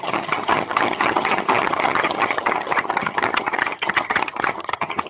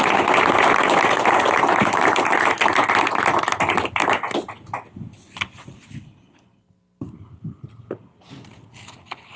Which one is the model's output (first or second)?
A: first